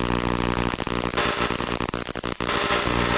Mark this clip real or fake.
real